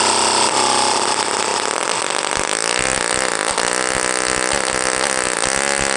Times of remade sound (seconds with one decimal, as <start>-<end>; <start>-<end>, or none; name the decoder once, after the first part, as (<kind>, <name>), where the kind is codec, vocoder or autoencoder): none